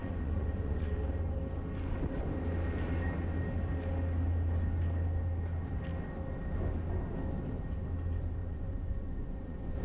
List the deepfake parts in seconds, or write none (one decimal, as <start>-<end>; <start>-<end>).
0.0-0.9; 8.4-9.8